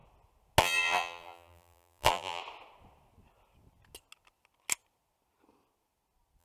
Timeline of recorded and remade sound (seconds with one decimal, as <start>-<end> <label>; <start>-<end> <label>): 0.0-0.6 recorded; 0.6-2.4 remade; 2.4-6.4 recorded